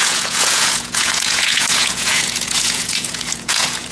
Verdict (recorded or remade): remade